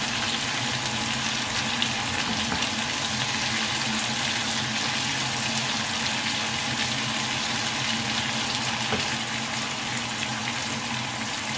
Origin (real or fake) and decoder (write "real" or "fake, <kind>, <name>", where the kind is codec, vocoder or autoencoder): real